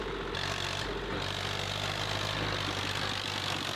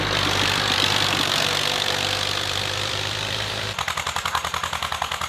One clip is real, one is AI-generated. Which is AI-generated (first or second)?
second